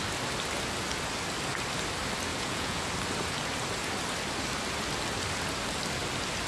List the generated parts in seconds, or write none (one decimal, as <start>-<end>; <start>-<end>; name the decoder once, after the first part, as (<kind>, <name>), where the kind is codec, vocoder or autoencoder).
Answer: 2.3-2.9 (vocoder, Vocos)